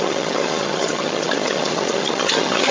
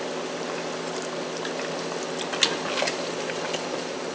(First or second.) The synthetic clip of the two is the first